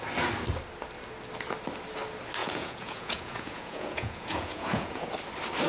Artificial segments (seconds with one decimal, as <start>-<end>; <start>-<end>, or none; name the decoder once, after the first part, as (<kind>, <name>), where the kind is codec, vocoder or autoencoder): 2.4-5.1 (vocoder, Vocos)